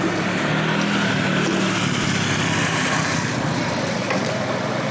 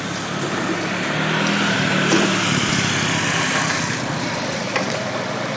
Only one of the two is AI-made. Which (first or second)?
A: second